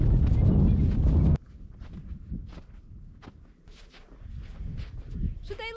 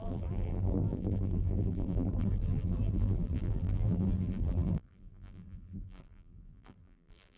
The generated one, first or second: second